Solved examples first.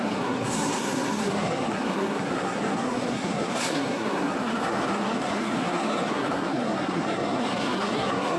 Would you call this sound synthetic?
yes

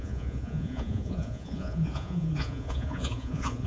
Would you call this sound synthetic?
yes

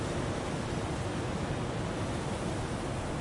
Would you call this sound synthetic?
no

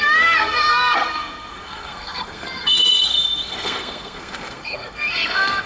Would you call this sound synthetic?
yes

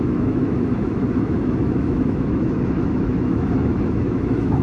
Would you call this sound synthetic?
yes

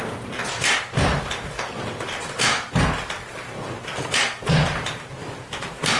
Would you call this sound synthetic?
no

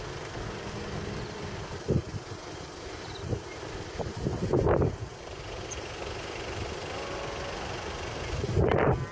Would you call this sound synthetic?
no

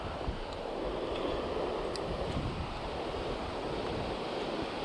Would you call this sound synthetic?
yes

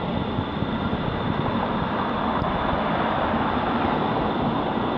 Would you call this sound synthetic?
yes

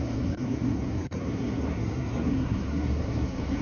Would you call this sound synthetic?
yes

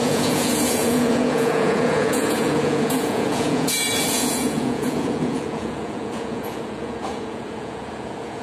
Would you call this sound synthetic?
yes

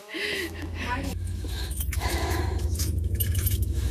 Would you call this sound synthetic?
yes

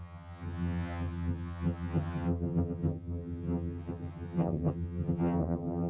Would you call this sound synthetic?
yes